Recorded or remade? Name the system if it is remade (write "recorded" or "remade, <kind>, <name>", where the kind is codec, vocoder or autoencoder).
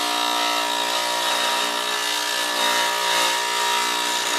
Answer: recorded